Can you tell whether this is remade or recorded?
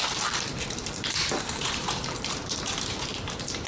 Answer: remade